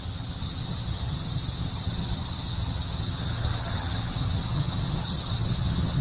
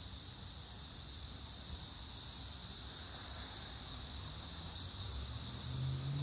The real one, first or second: second